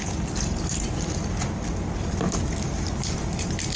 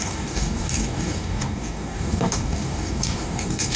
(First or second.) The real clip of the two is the first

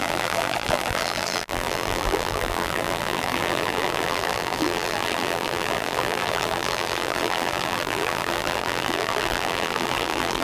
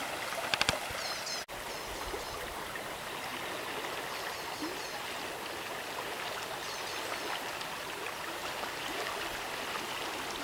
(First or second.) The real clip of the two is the second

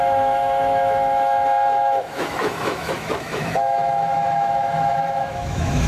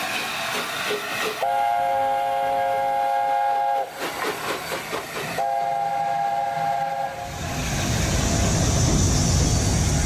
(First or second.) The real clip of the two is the second